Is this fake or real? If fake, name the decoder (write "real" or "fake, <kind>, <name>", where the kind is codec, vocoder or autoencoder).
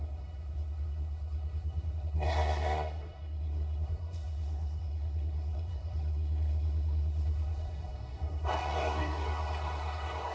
fake, codec, SNAC